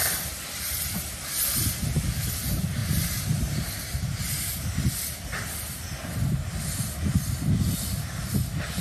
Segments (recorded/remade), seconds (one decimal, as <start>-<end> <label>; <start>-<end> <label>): 0.0-2.8 recorded; 2.8-4.2 remade; 4.2-8.8 recorded